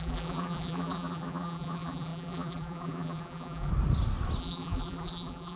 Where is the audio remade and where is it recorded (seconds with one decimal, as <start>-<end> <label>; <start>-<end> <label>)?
0.0-3.7 remade; 3.7-4.4 recorded; 4.4-5.6 remade